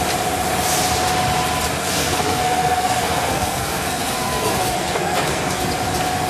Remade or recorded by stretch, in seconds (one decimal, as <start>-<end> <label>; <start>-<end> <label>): 0.0-1.8 recorded; 1.8-5.6 remade; 5.6-6.3 recorded